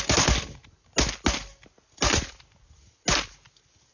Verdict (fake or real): real